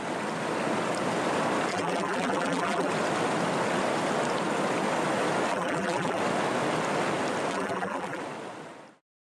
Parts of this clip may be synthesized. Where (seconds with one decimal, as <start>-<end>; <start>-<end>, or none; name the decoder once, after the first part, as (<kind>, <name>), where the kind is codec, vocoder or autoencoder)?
1.7-2.9 (vocoder, BigVGAN v2); 5.5-6.2; 7.5-8.2